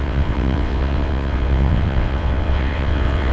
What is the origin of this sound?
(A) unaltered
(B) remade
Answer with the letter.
B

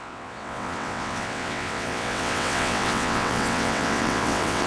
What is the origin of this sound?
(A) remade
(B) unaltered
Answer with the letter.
A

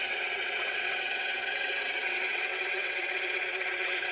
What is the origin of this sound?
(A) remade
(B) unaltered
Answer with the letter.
A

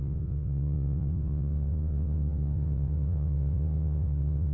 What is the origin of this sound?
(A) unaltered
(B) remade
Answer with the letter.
B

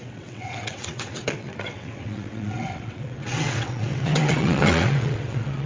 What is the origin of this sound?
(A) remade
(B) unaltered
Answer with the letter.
A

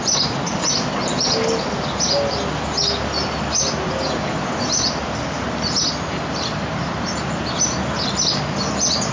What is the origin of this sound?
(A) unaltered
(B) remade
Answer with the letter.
A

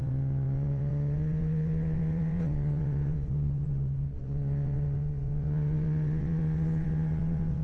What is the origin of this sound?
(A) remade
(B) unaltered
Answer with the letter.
A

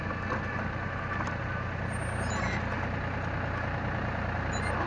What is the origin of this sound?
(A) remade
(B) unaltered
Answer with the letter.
B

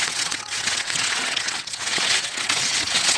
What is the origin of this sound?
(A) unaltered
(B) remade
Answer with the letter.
B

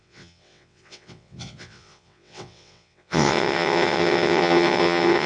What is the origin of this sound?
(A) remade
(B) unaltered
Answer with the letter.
A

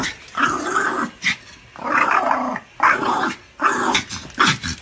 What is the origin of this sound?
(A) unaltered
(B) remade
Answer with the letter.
A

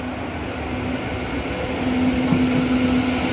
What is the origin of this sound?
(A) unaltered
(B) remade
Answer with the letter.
A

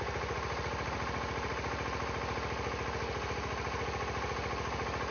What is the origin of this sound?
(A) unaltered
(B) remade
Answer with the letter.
A